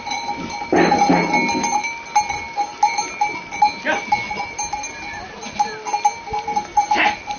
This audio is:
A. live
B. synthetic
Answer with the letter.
A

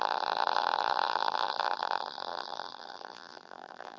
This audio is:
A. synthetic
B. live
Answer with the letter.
A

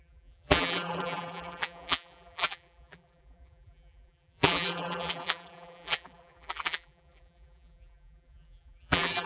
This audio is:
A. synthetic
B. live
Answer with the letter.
A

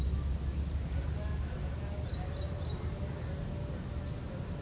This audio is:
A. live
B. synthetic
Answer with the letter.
A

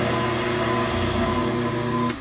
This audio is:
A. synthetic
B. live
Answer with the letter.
B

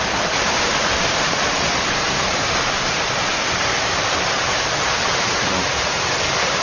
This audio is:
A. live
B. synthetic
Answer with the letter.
B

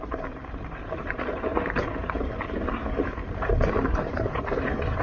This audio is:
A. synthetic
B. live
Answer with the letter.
A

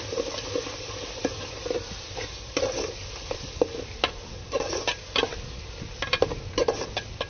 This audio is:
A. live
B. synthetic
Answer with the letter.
A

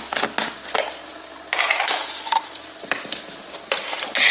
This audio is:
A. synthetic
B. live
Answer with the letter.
B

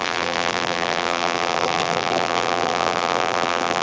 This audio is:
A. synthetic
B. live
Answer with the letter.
A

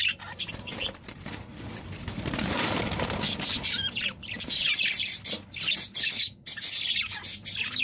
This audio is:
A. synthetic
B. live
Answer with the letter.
A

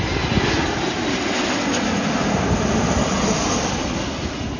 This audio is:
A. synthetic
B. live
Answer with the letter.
A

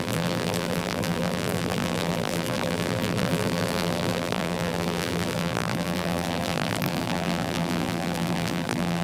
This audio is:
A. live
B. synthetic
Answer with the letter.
B